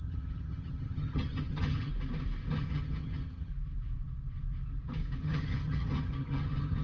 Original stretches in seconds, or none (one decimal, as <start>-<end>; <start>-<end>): 1.9-2.5; 3.5-5.2